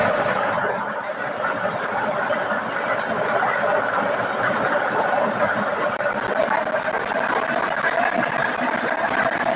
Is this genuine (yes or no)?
no